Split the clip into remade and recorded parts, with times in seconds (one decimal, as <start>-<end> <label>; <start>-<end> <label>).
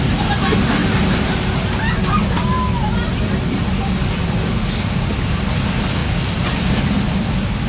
0.0-7.7 recorded